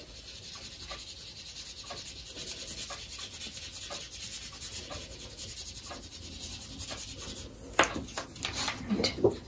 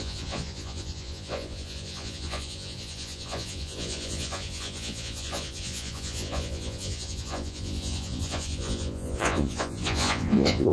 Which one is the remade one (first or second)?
second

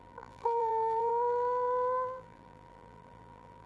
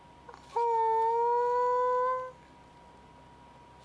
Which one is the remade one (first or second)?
first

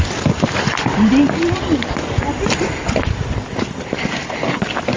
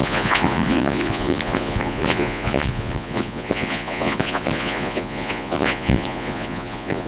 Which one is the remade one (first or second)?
second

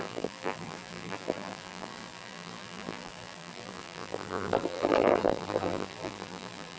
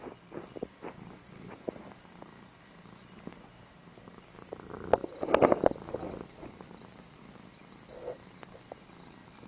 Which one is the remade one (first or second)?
first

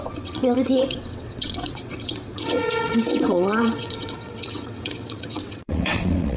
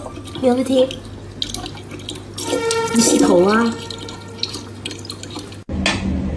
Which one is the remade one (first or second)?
first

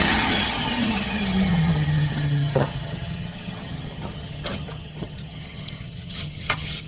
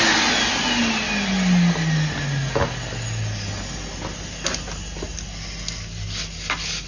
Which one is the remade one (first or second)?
first